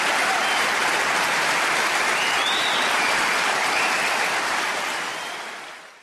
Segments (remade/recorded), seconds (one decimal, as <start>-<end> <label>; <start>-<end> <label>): 0.0-6.0 recorded